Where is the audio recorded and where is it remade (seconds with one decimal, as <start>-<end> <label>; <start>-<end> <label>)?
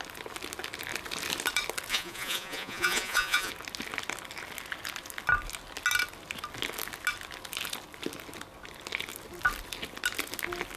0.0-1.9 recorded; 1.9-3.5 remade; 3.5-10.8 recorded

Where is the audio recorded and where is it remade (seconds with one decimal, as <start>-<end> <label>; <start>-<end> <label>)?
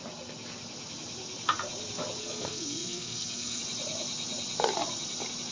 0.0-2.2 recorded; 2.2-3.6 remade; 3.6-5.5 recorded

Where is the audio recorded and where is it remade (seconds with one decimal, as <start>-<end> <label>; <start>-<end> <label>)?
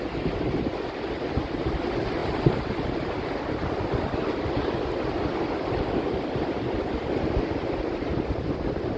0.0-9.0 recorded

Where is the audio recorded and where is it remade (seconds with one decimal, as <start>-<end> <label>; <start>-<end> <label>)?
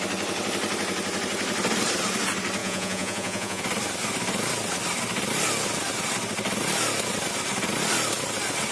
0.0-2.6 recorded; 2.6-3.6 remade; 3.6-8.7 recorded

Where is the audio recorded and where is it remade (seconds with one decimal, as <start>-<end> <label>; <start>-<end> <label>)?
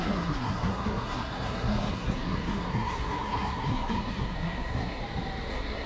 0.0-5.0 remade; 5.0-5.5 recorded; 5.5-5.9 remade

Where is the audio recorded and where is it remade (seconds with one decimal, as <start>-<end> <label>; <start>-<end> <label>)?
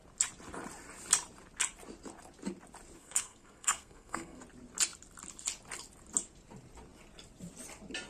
0.0-3.0 recorded; 3.0-4.4 remade; 4.4-8.1 recorded